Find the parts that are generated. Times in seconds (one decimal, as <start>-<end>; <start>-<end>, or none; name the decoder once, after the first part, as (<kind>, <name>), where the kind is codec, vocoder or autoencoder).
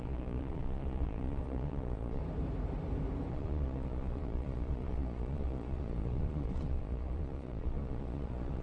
0.0-2.2 (vocoder, Vocos); 3.3-8.6